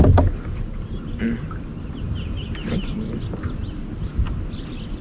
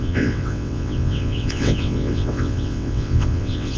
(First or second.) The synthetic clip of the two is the second